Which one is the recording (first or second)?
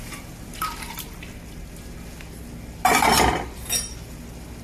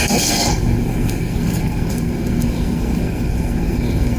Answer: first